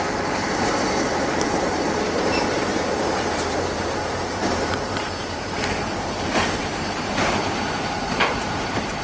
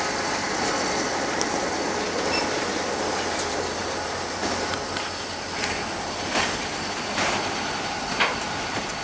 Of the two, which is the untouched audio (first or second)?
second